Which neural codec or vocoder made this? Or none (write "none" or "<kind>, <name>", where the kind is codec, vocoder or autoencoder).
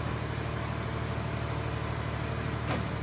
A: none